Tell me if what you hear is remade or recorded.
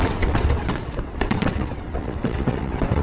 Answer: remade